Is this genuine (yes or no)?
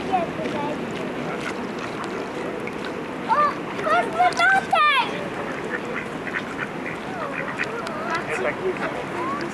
yes